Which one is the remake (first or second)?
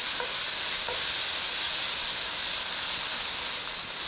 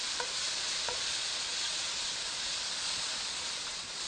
second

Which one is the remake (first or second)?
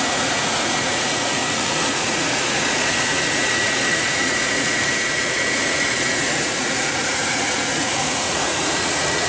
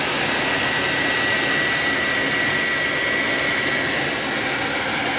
first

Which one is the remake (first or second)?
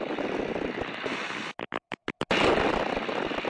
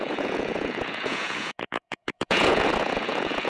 second